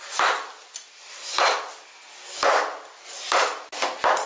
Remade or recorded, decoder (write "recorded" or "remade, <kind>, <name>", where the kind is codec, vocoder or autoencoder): recorded